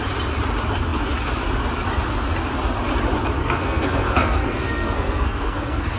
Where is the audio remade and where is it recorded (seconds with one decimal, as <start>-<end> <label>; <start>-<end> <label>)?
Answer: 0.0-3.4 recorded; 3.4-6.0 remade